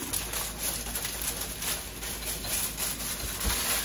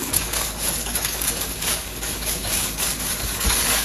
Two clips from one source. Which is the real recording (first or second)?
first